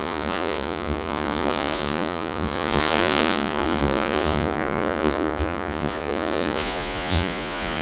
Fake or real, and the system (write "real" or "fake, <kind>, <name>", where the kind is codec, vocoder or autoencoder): fake, vocoder, Vocos